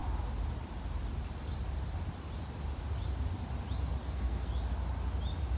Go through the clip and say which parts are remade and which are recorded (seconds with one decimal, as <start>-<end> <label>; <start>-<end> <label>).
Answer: 0.0-4.0 recorded; 4.0-4.5 remade; 4.5-5.6 recorded